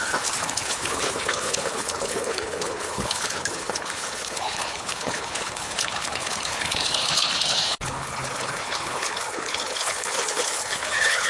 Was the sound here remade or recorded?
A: remade